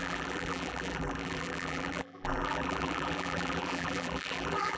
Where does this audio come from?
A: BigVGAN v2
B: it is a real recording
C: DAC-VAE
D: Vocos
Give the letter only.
A